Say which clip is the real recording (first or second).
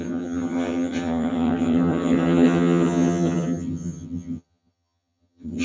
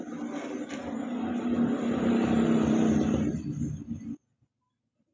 second